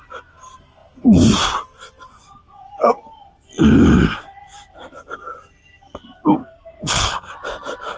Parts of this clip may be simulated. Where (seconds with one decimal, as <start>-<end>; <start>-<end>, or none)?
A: 6.4-7.3